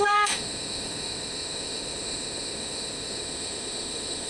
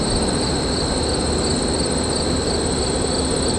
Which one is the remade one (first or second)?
first